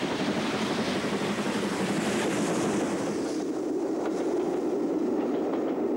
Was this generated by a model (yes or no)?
no